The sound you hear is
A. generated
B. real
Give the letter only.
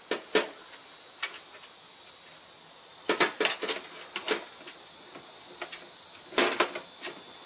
B